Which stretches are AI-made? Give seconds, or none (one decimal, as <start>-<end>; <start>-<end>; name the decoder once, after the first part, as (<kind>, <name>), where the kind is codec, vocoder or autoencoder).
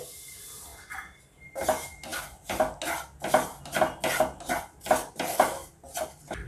none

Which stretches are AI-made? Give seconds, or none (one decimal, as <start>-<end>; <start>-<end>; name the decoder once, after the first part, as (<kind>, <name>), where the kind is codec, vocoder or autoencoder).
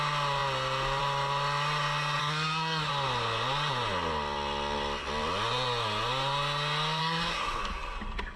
2.2-2.9 (codec, SNAC); 7.0-7.6